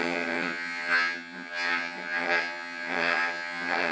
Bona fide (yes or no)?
no